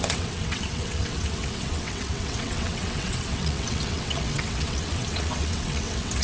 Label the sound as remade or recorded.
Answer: remade